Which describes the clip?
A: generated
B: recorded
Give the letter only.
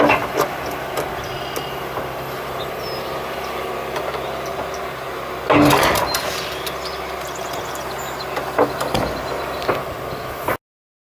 B